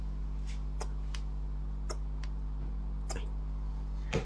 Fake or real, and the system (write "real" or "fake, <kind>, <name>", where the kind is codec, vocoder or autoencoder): real